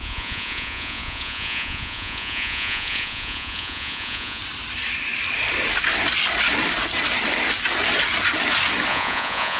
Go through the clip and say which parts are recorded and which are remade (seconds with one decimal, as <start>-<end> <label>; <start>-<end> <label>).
0.0-4.4 remade; 4.4-8.9 recorded; 8.9-9.6 remade